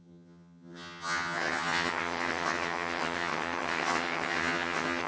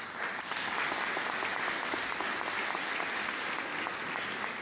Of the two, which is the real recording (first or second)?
second